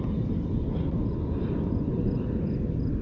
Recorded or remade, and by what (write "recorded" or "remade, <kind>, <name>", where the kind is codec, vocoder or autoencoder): recorded